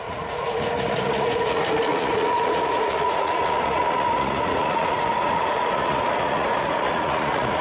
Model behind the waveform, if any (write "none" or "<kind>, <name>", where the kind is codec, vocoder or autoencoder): vocoder, Vocos